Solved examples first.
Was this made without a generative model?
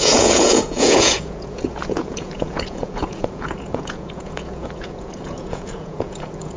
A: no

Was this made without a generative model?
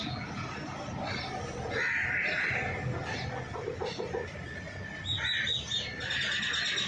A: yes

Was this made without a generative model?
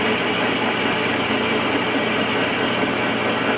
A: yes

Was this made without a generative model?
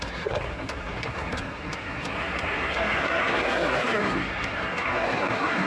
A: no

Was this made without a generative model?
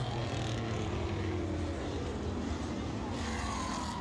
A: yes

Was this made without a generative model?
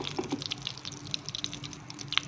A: yes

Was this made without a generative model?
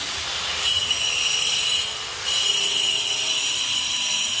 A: yes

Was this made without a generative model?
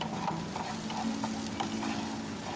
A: yes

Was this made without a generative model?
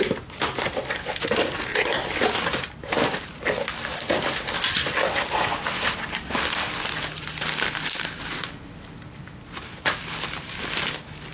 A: yes